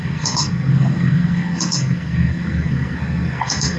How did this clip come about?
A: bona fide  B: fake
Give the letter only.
B